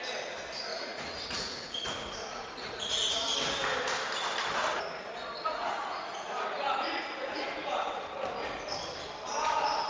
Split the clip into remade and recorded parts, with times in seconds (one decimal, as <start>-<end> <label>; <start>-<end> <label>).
0.0-0.7 recorded; 0.7-3.2 remade; 3.2-5.5 recorded; 5.5-7.7 remade; 7.7-9.9 recorded